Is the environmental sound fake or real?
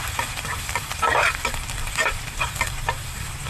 fake